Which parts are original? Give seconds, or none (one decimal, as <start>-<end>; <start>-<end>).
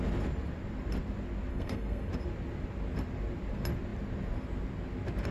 0.0-1.5; 2.1-5.3